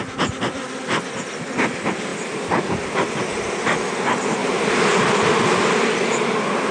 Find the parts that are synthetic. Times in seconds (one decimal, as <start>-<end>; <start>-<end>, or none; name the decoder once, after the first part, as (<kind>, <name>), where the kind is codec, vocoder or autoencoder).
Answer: 4.4-5.0 (vocoder, BigVGAN v2)